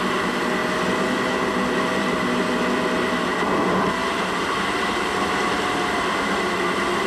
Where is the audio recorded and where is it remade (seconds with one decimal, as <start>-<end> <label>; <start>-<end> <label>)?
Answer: 0.0-7.1 recorded